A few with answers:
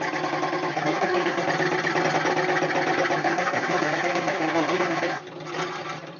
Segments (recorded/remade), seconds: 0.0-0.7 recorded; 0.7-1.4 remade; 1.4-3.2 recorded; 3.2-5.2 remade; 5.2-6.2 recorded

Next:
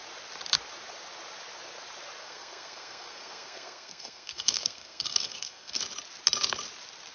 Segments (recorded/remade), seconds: 0.0-2.2 recorded; 2.2-5.8 remade; 5.8-7.1 recorded

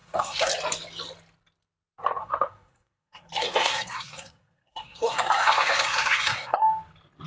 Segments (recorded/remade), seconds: 0.0-0.5 remade; 0.5-2.2 recorded; 2.2-6.6 remade; 6.6-7.3 recorded

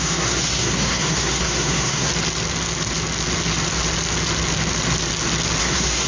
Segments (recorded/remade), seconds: 0.0-2.1 remade; 2.1-5.6 recorded; 5.6-6.1 remade

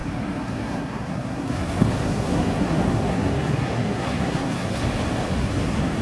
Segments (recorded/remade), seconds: 0.0-4.8 remade; 4.8-5.4 recorded; 5.4-6.0 remade

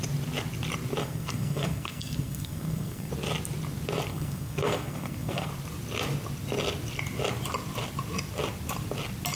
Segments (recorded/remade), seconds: 0.0-1.0 recorded; 1.0-3.1 remade; 3.1-4.1 recorded; 4.1-5.5 remade; 5.5-9.4 recorded